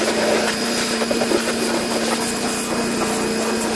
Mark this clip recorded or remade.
recorded